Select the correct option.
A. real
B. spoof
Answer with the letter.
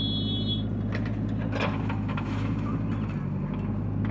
A